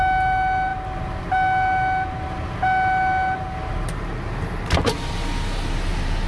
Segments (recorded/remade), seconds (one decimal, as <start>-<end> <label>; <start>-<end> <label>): 0.0-6.3 recorded